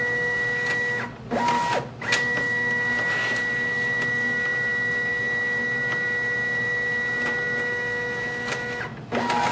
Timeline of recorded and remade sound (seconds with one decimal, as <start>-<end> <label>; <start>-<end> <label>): 0.0-9.5 recorded